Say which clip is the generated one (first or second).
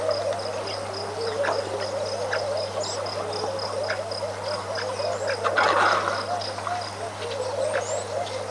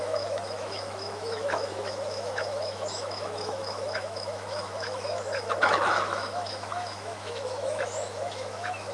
second